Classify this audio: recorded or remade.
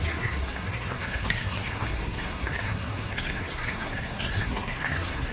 remade